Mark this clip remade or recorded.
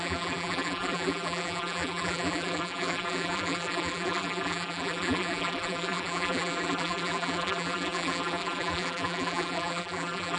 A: remade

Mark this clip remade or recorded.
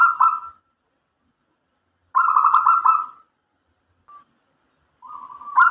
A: recorded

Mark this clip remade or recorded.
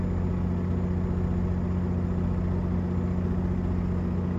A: recorded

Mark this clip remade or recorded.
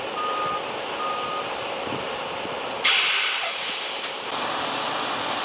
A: remade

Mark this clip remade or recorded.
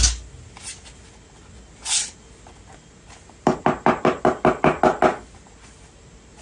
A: recorded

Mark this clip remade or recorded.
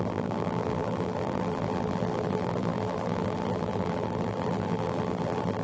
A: remade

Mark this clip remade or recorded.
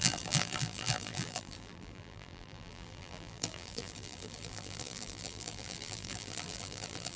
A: remade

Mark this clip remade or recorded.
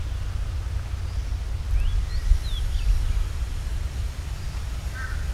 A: recorded